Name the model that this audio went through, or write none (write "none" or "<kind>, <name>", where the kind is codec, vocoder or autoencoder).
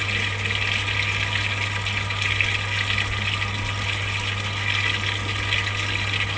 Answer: none